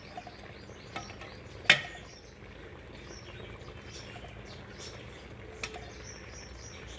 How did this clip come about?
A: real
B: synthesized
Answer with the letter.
A